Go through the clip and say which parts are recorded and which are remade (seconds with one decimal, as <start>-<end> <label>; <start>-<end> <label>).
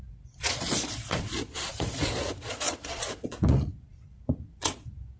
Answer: 0.0-5.2 remade